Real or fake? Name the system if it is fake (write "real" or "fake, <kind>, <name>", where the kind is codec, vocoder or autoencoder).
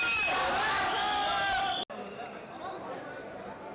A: real